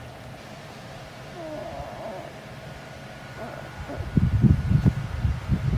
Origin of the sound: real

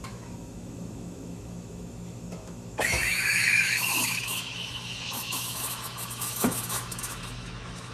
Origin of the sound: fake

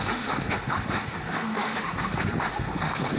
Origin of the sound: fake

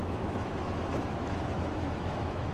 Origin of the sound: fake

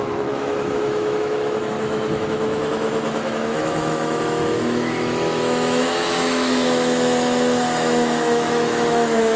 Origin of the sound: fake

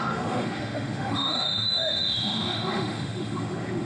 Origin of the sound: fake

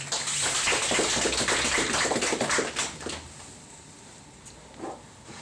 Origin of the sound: real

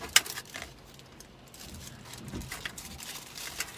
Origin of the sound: real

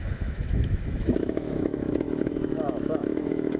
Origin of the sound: fake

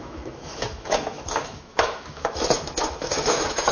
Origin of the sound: fake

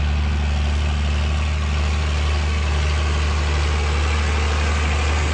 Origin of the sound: real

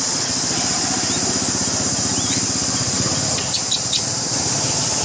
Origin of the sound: real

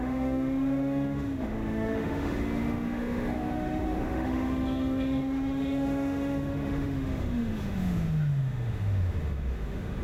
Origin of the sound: fake